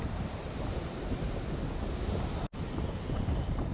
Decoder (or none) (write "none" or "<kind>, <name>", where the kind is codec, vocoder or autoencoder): none